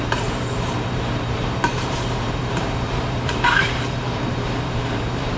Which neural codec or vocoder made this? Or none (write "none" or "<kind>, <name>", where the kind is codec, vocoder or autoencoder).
vocoder, BigVGAN v2